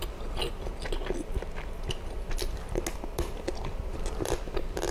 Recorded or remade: recorded